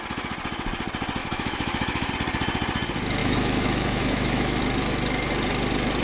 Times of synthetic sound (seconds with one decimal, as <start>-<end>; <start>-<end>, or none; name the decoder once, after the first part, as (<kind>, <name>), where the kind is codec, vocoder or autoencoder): 1.2-2.1 (autoencoder, DAC-VAE); 3.2-4.6